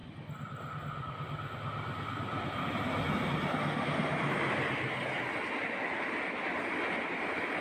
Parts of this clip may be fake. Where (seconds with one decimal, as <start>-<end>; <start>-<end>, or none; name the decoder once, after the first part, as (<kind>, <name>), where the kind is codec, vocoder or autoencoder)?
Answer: none